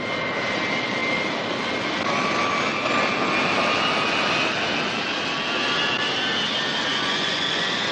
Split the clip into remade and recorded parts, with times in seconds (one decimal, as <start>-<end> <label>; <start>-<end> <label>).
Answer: 0.0-6.9 recorded; 6.9-7.9 remade